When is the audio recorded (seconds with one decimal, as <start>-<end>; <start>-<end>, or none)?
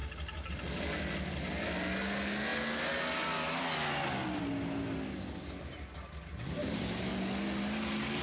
0.0-6.6; 7.1-8.2